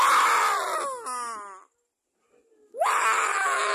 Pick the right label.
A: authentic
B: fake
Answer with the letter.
A